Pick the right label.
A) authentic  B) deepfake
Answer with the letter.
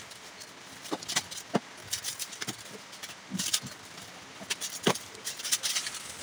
A